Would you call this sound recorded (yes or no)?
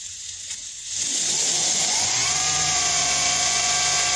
no